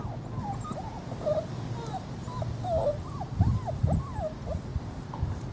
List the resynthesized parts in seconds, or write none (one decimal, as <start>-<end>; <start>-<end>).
none